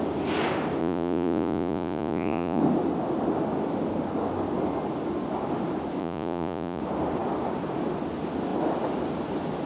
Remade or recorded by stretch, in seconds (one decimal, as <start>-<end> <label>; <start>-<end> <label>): 0.0-0.8 recorded; 0.8-2.6 remade; 2.6-6.0 recorded; 6.0-6.8 remade; 6.8-9.7 recorded